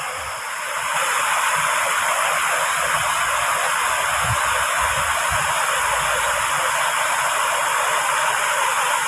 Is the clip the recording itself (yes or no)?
yes